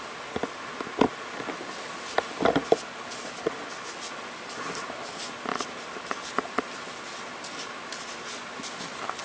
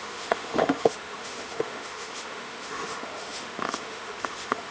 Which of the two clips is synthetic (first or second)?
second